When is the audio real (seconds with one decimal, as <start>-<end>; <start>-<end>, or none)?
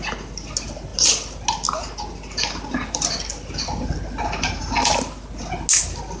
0.0-6.2